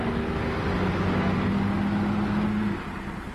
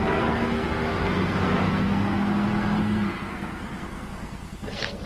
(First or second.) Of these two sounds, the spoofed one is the second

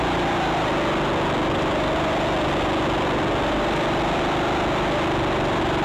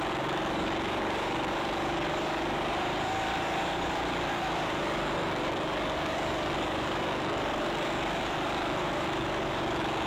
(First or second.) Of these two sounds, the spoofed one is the second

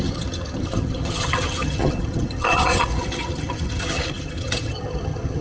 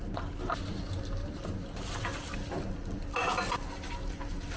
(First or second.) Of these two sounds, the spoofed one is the first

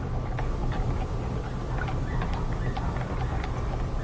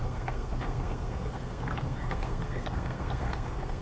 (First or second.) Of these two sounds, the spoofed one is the second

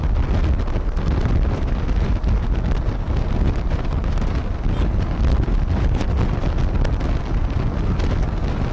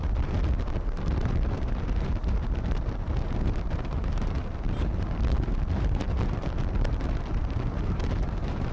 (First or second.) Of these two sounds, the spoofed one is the second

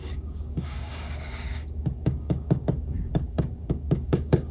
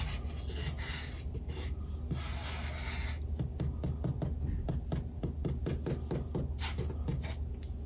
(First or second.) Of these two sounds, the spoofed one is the first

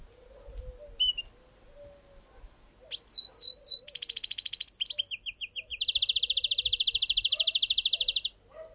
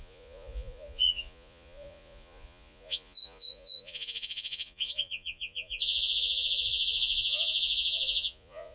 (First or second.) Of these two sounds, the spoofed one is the second